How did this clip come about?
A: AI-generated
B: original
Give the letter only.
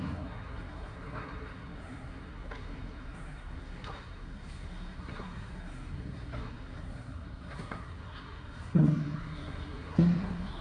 A